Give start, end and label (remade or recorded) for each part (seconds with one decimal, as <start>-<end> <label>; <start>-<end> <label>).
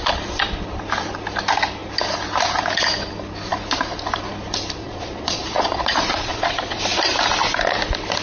0.0-4.8 recorded; 4.8-6.8 remade; 6.8-8.2 recorded